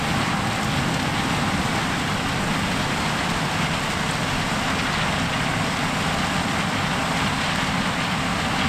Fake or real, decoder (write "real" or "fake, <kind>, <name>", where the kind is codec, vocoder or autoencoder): real